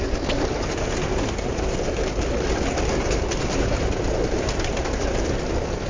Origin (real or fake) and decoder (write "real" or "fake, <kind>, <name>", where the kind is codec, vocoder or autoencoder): real